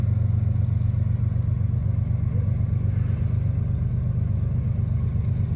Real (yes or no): yes